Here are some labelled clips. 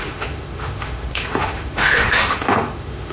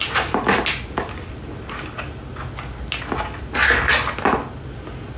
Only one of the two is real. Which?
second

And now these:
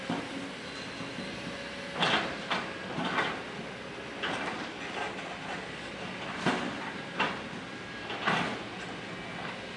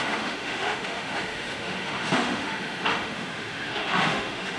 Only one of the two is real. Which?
first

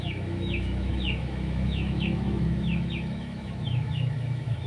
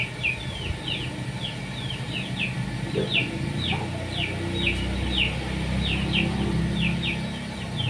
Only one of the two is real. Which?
second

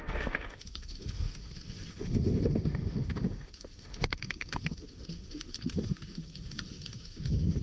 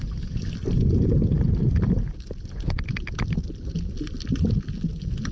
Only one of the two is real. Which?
second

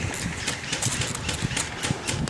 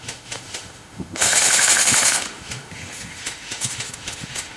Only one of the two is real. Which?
first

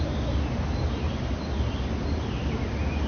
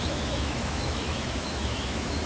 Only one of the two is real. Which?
first